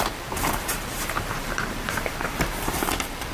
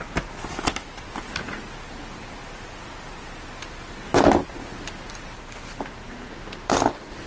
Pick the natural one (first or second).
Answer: second